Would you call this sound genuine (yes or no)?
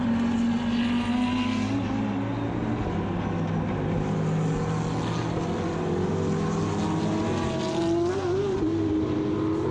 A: yes